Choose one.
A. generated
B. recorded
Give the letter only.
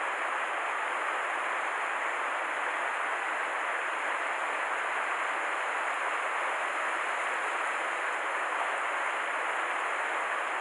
B